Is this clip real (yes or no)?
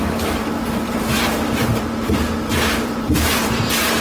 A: no